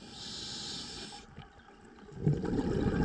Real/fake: real